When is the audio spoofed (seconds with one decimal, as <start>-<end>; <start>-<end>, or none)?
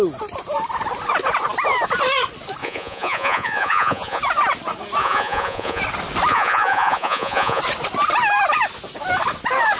2.6-4.2; 5.0-5.8; 6.3-7.6